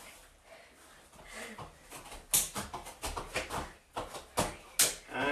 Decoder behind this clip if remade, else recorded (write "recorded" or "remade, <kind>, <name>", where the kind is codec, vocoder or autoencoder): recorded